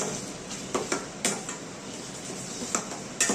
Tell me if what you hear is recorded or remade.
recorded